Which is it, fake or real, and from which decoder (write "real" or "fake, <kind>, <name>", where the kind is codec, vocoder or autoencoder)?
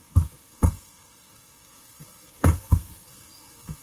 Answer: fake, codec, SNAC